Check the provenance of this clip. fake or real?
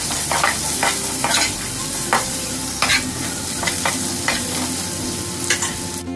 real